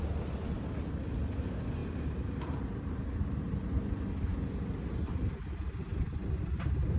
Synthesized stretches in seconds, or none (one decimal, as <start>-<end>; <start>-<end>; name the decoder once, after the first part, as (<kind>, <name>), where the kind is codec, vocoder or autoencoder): 1.8-3.7 (vocoder, BigVGAN v2)